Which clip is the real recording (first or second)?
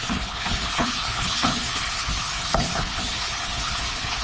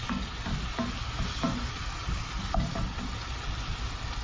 second